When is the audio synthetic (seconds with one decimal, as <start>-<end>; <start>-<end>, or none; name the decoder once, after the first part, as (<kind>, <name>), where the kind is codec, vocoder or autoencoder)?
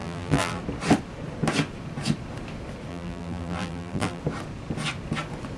0.0-0.6 (vocoder, BigVGAN v2); 2.9-4.2